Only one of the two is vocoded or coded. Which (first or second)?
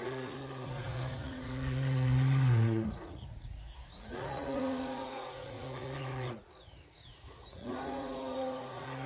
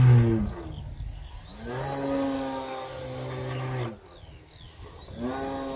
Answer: first